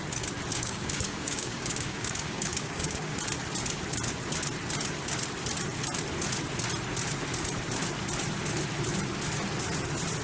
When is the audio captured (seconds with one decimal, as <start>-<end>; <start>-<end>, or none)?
0.0-0.5; 3.2-10.2